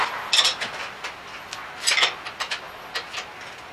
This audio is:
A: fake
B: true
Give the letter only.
B